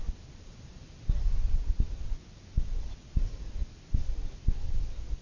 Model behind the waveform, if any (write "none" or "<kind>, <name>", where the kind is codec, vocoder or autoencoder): none